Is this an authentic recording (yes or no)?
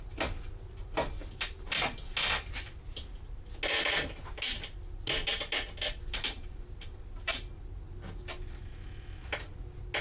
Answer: yes